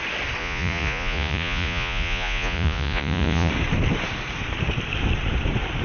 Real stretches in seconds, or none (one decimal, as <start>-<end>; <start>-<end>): 0.0-0.4; 3.5-5.8